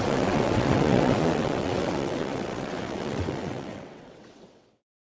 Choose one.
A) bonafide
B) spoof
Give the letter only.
B